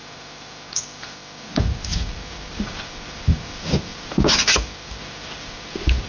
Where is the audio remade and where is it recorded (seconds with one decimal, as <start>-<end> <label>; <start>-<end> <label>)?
0.0-1.9 remade; 1.9-2.5 recorded; 2.5-6.1 remade